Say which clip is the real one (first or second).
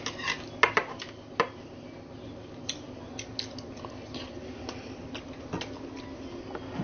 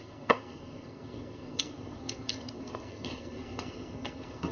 first